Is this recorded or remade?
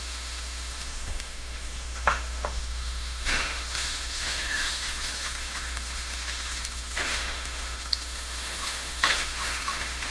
remade